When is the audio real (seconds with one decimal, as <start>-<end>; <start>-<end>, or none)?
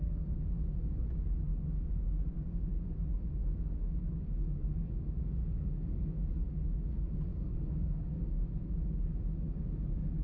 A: 0.0-1.5; 3.0-3.4; 6.3-7.3; 8.4-10.2